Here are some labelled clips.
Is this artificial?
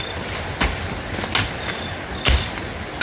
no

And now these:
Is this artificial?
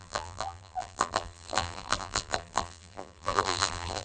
yes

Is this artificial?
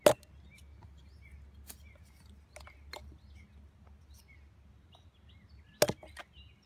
no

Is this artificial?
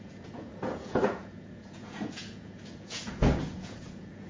yes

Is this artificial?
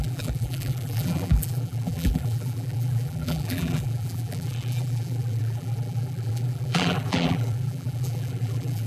yes